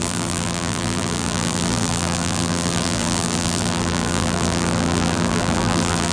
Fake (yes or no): yes